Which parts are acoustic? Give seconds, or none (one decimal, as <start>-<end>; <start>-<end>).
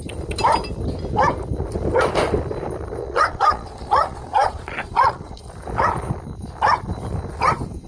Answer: 0.0-3.0; 5.4-7.9